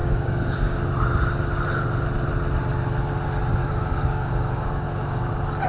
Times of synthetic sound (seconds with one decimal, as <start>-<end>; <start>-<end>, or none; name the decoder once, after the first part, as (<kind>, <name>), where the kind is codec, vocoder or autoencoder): 0.0-0.8 (codec, DAC); 3.6-5.3